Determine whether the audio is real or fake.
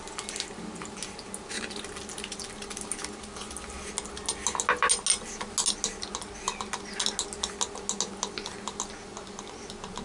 real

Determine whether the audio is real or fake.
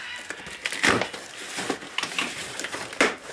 real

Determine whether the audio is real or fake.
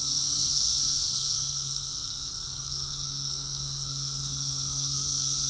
fake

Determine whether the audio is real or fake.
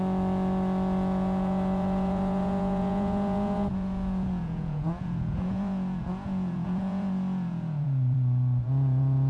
fake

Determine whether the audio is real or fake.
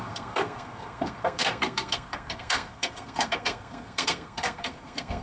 fake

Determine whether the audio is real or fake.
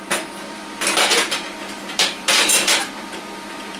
fake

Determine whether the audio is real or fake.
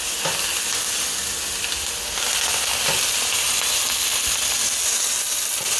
real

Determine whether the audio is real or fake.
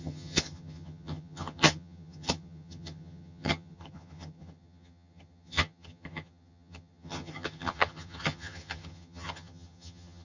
fake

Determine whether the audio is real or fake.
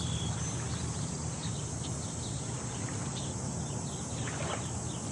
real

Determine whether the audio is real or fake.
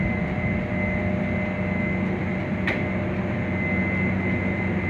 real